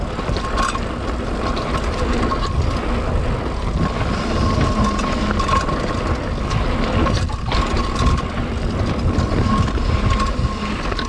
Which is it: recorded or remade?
recorded